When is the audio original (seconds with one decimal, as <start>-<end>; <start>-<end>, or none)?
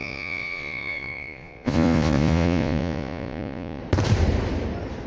3.8-5.1